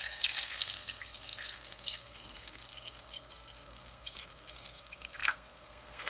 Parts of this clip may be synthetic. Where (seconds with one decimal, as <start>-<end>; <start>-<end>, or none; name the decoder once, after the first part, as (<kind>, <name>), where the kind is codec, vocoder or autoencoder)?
0.0-6.1 (codec, SNAC)